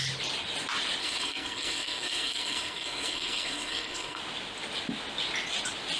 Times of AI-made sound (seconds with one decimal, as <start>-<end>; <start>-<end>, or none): 1.0-4.2

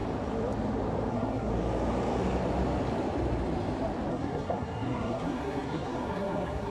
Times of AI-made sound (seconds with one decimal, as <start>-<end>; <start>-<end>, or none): 1.1-1.5; 4.1-6.7

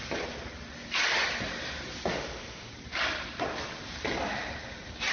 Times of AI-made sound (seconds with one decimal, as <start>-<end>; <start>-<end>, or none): 2.1-2.7